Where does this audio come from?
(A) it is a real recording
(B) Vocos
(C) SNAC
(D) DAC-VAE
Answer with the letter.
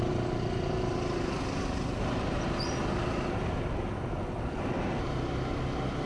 A